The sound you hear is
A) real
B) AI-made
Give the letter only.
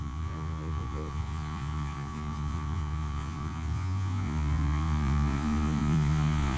B